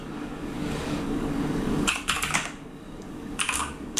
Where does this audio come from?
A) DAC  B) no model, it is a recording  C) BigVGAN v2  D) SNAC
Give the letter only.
A